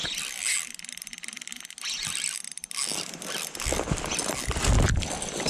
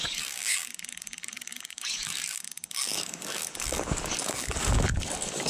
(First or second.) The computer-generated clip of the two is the second